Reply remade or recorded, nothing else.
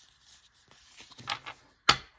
recorded